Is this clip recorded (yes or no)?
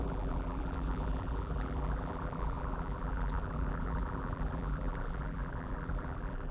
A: no